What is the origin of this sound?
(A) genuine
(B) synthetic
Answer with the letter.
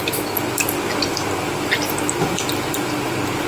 A